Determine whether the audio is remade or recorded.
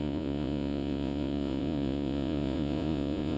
remade